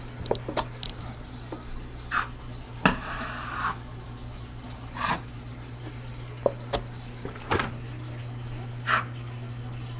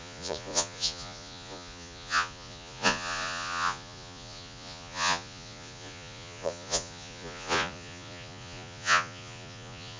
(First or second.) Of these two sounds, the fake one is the second